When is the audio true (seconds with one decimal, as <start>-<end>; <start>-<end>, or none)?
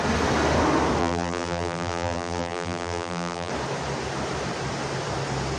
0.0-1.0; 3.5-5.6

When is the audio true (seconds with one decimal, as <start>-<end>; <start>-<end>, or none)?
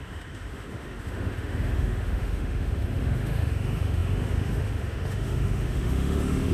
none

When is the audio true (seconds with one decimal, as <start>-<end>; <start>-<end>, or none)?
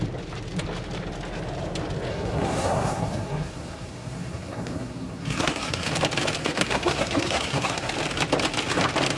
0.0-2.1; 5.9-6.4; 7.9-9.2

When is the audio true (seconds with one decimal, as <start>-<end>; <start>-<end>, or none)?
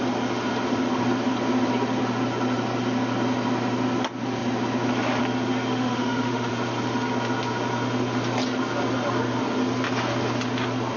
0.0-5.7; 6.5-11.0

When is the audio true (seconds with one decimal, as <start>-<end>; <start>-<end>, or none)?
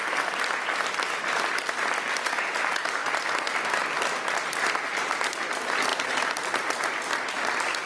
0.0-7.9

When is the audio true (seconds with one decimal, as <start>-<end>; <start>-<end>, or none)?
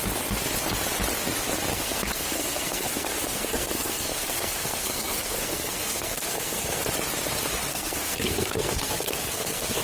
0.0-1.7; 6.8-7.7